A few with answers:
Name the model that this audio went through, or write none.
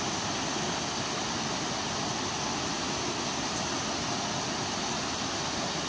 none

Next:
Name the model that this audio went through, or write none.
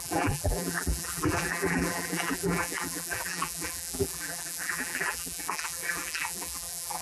vocoder, BigVGAN v2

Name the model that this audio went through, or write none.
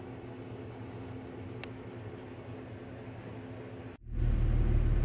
none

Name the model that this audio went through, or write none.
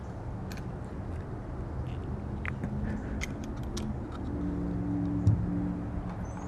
none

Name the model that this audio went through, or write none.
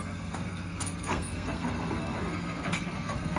codec, SNAC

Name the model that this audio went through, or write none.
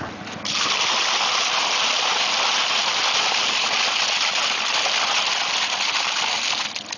none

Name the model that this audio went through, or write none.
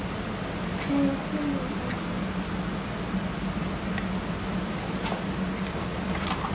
none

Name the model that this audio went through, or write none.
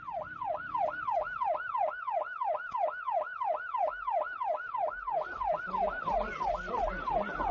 none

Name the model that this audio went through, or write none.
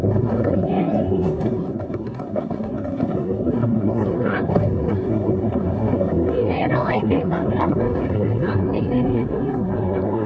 codec, SNAC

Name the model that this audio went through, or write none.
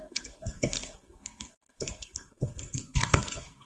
codec, SNAC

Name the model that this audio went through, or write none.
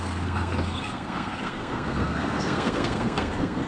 codec, SNAC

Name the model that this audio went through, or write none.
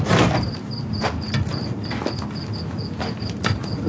none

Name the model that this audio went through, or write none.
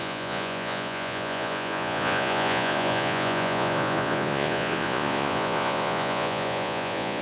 vocoder, Vocos